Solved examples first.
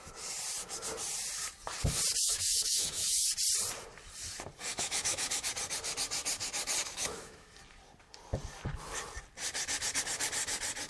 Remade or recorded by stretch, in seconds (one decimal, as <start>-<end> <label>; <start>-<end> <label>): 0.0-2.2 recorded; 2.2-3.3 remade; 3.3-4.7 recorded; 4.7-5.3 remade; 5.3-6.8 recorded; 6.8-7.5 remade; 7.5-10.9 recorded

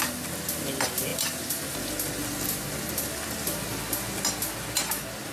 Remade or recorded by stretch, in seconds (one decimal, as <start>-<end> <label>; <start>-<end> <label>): 0.0-5.3 recorded

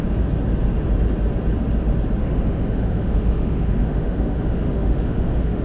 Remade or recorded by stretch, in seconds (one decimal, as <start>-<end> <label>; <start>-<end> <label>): 0.0-2.2 recorded; 2.2-5.6 remade

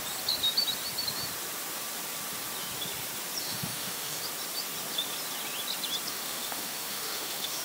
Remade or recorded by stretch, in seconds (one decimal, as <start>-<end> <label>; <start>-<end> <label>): 0.0-3.4 recorded; 3.4-4.2 remade; 4.2-6.1 recorded; 6.1-7.6 remade

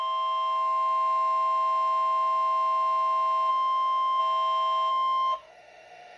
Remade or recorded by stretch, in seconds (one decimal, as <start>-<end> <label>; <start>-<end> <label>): 0.0-3.5 recorded; 3.5-4.2 remade; 4.2-4.9 recorded; 4.9-6.2 remade

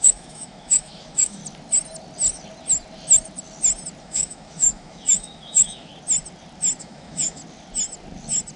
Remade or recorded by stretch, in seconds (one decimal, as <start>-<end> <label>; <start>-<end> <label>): 0.0-1.4 remade; 1.4-4.0 recorded; 4.0-5.9 remade; 5.9-6.8 recorded; 6.8-7.4 remade; 7.4-8.6 recorded

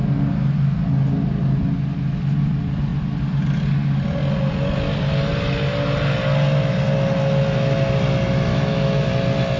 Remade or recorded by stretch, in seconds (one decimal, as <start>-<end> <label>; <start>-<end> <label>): 0.0-8.5 recorded; 8.5-9.1 remade; 9.1-9.6 recorded

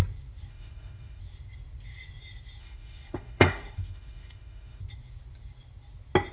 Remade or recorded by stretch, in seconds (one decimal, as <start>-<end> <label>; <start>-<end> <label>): 0.0-0.5 recorded; 0.5-1.2 remade; 1.2-2.6 recorded; 2.6-4.8 remade; 4.8-6.3 recorded